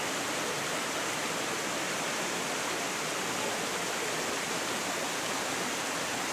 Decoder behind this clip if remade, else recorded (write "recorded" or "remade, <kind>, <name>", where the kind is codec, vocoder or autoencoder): recorded